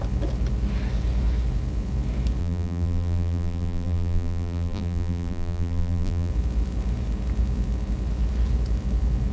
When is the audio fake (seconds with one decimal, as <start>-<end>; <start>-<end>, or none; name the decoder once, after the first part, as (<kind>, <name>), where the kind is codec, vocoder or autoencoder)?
2.4-6.3 (vocoder, BigVGAN v2)